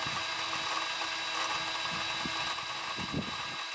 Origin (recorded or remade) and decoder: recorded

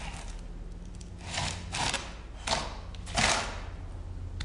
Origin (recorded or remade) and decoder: recorded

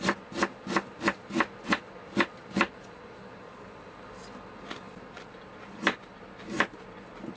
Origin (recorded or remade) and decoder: recorded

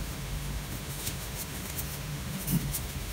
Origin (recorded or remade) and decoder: remade, autoencoder, DAC-VAE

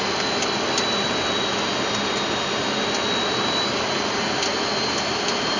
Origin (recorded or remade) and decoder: recorded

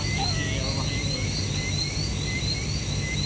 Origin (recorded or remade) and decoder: recorded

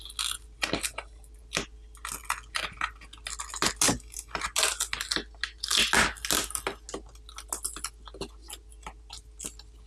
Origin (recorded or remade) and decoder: recorded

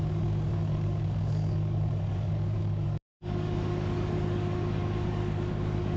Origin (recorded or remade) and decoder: remade, codec, DAC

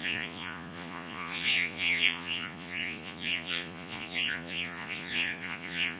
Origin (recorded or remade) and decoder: remade, vocoder, Vocos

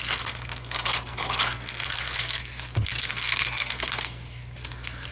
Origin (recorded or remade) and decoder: remade, codec, SNAC